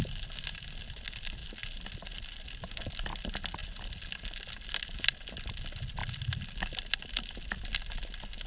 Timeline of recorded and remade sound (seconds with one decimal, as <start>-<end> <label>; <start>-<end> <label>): 0.0-8.5 recorded

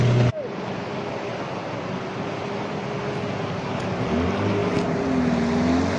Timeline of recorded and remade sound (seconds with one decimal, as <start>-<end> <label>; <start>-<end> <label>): 0.0-6.0 recorded

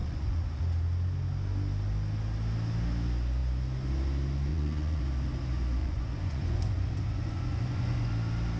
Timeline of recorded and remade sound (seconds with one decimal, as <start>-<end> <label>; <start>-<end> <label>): 0.0-0.6 remade; 0.6-4.5 recorded; 4.5-5.0 remade; 5.0-5.8 recorded; 5.8-8.1 remade; 8.1-8.6 recorded

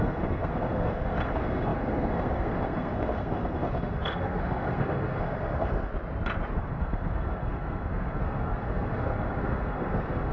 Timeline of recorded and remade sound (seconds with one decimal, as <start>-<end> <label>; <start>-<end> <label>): 0.0-5.9 remade; 5.9-6.5 recorded; 6.5-10.3 remade

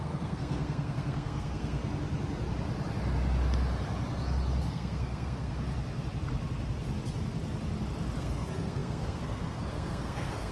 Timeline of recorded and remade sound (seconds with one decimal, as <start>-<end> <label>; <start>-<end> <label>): 0.0-1.8 remade; 1.8-4.7 recorded; 4.7-5.5 remade; 5.5-8.2 recorded; 8.2-10.5 remade

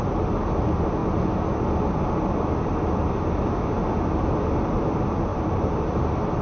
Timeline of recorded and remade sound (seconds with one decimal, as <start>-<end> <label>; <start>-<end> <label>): 0.0-6.4 recorded